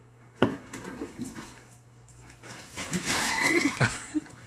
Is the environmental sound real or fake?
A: fake